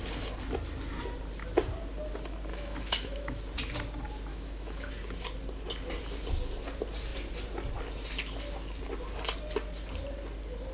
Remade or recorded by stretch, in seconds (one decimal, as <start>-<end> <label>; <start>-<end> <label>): 0.0-2.5 recorded; 2.5-3.4 remade; 3.4-4.3 recorded; 4.3-4.9 remade; 4.9-10.7 recorded